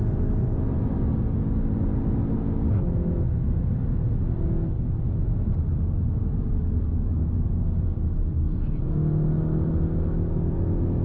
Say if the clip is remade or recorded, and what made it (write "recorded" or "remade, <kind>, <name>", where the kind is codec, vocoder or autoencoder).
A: recorded